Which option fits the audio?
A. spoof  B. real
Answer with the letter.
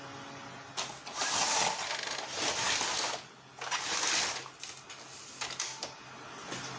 B